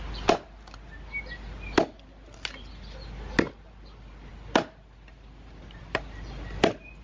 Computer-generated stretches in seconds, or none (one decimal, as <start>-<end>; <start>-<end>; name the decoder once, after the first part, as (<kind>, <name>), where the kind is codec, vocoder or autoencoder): none